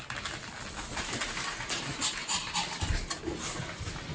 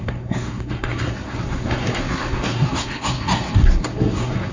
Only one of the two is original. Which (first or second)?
first